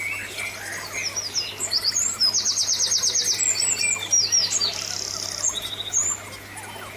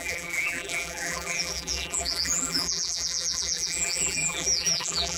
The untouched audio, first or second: first